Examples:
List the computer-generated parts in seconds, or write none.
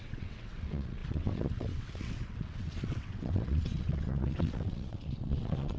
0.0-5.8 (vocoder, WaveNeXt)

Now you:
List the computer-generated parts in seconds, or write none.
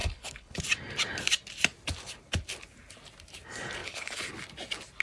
0.0-0.6 (codec, HILCodec); 3.8-4.3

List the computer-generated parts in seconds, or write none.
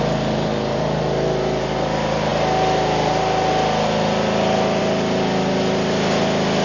none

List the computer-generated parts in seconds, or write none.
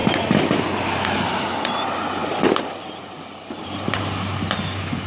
none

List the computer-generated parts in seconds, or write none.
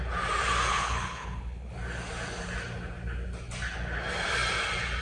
0.7-1.7 (codec, HILCodec)